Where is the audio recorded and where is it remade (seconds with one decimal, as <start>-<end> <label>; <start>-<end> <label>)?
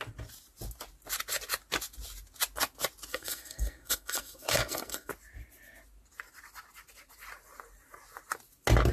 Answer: 0.0-3.1 recorded; 3.1-5.1 remade; 5.1-8.9 recorded